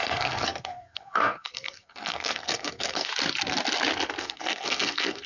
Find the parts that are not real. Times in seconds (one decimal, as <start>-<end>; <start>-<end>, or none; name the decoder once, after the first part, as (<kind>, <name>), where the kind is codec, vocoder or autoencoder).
0.0-3.1 (codec, SNAC); 4.2-5.3